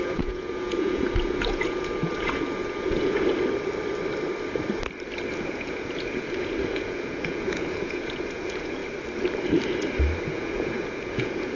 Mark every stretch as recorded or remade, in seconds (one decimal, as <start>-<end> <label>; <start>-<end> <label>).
0.0-3.3 remade; 3.3-5.3 recorded; 5.3-8.8 remade; 8.8-10.2 recorded; 10.2-11.6 remade